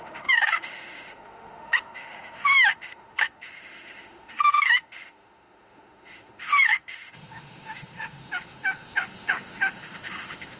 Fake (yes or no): yes